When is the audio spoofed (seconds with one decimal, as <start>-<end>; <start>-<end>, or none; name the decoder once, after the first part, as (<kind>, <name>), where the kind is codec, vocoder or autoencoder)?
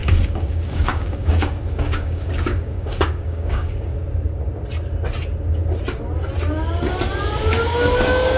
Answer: 0.0-3.9 (codec, DAC); 7.5-8.4